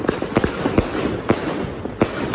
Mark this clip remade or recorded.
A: recorded